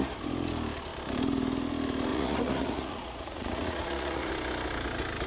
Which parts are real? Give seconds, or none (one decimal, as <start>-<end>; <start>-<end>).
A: 0.0-2.1; 4.3-5.3